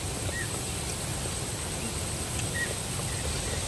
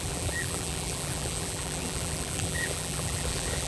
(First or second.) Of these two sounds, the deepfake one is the second